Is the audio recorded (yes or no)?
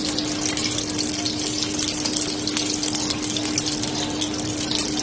yes